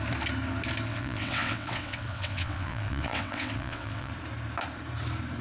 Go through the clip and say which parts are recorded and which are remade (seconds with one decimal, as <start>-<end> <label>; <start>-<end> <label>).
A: 0.0-0.9 recorded; 0.9-4.1 remade; 4.1-5.4 recorded